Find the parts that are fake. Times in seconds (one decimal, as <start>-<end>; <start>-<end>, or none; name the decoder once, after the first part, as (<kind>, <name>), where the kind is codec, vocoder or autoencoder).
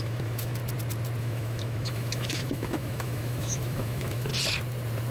0.0-0.6 (autoencoder, DAC-VAE); 1.2-4.3